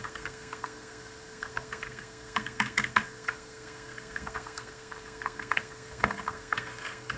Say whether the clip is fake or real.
fake